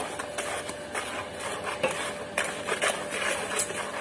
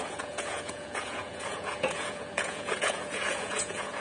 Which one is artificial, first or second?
second